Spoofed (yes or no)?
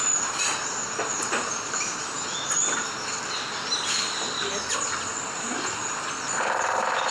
no